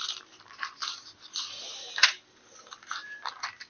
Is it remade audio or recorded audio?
recorded